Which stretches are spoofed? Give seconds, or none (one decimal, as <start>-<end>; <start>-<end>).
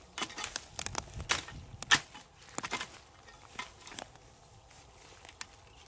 none